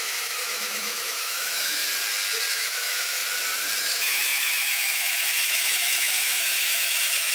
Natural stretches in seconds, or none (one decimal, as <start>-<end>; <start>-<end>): 1.8-2.5; 3.2-3.8